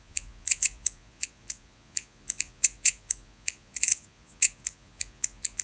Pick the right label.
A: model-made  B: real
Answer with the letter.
A